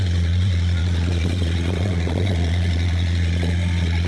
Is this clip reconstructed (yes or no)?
yes